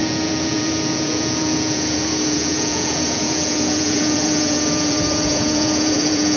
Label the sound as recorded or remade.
remade